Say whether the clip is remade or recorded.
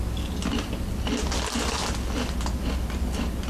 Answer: recorded